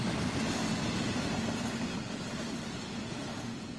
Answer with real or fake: real